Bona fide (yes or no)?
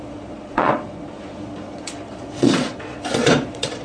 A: no